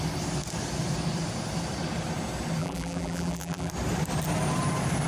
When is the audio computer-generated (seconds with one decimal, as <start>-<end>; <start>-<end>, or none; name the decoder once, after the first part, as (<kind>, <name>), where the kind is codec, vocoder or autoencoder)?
2.6-3.7 (vocoder, BigVGAN v2)